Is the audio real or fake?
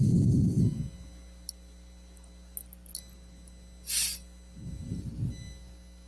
real